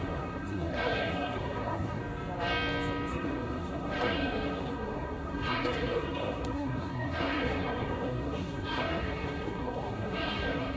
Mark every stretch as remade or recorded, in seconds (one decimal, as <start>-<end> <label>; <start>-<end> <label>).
0.0-2.0 remade; 2.0-3.1 recorded; 3.1-10.8 remade